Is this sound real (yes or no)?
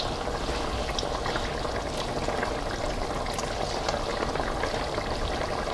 yes